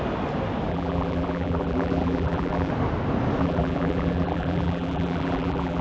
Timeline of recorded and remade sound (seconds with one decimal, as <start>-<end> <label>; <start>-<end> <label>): 0.0-0.7 recorded; 0.7-2.7 remade; 2.7-3.4 recorded; 3.4-5.8 remade